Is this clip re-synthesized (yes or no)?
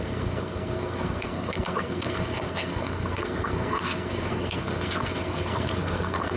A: yes